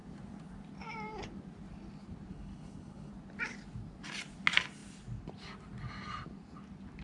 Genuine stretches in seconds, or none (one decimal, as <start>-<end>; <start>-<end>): 0.0-2.3; 3.1-7.0